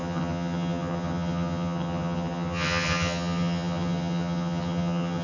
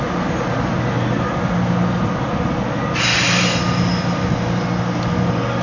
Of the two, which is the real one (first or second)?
second